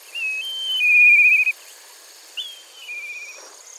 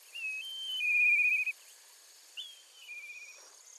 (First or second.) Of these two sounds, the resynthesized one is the second